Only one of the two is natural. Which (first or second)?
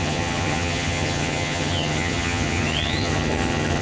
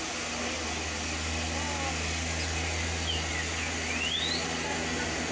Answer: second